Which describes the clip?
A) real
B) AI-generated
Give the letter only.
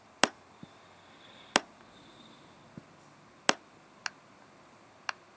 A